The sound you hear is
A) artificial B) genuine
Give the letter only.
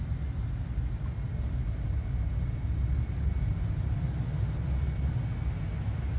B